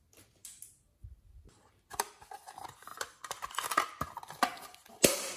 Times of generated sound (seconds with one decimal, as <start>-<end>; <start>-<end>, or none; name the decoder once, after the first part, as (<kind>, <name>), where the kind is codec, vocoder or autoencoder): none